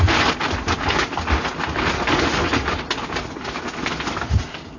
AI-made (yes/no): no